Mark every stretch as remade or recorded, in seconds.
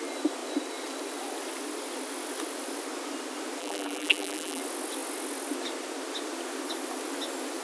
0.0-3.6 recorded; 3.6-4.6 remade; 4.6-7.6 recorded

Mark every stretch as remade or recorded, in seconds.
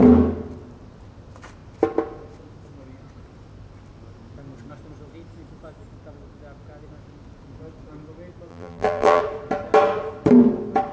0.0-8.5 recorded; 8.5-9.2 remade; 9.2-10.9 recorded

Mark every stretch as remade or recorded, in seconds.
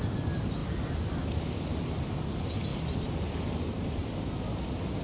0.0-5.0 recorded